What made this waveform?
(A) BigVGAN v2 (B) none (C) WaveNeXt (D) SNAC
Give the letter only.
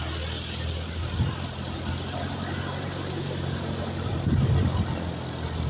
B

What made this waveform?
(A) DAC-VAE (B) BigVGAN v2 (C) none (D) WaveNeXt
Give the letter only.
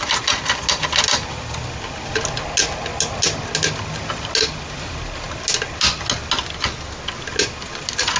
C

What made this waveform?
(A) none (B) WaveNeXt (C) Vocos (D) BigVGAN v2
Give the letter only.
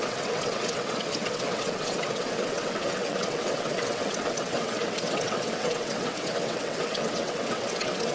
B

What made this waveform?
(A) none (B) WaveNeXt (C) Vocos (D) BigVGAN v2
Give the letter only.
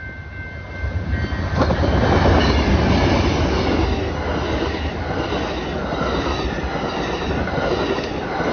A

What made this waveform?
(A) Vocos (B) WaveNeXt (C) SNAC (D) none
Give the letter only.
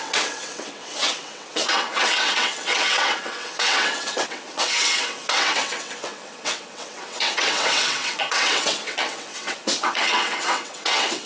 B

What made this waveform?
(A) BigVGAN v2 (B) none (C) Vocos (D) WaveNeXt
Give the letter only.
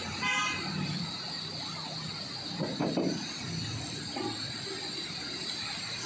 B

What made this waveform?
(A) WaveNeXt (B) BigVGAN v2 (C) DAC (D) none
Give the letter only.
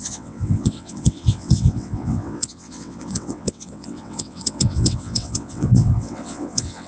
A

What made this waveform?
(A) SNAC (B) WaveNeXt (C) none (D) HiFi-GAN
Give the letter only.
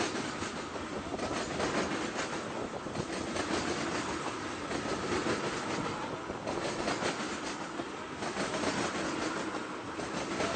C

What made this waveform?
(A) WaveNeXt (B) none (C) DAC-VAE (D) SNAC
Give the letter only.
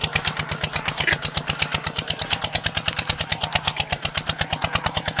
B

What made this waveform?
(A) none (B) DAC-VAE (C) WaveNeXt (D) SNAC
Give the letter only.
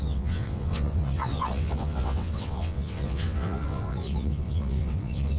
C